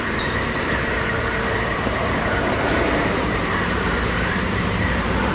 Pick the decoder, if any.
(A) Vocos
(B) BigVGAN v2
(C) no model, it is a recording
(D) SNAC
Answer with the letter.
B